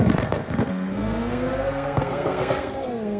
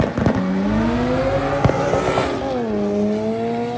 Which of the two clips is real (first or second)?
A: second